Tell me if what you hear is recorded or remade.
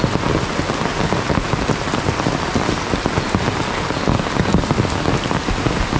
recorded